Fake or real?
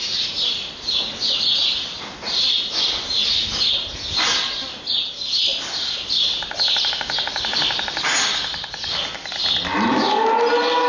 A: real